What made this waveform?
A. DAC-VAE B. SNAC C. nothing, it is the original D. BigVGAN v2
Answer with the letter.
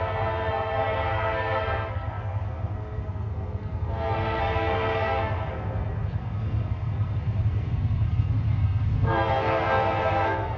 B